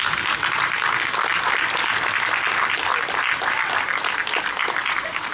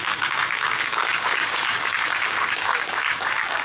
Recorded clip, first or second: first